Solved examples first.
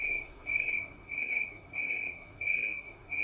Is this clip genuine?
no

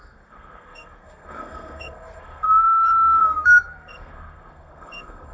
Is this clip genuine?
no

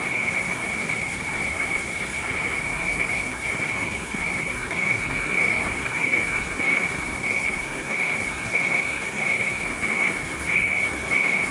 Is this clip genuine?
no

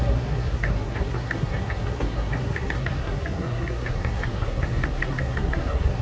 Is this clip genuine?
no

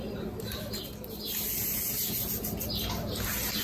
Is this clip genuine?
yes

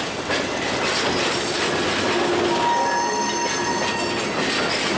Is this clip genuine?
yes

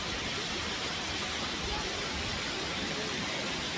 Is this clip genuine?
yes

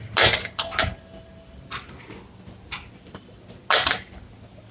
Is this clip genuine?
yes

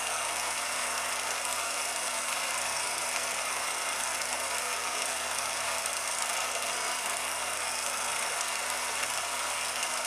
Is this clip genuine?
no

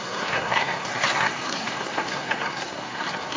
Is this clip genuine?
no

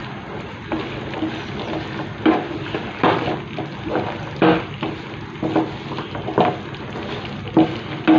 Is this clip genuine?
yes